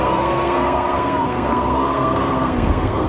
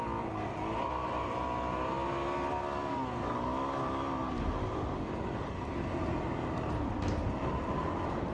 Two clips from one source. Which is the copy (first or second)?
first